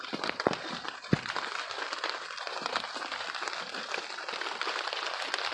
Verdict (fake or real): real